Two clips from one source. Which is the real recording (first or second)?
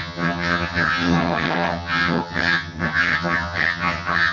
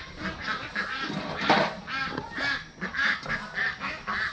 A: second